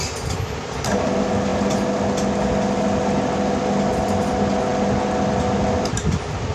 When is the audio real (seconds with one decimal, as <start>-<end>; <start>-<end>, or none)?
0.0-6.5